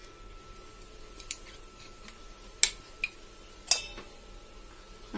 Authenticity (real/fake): real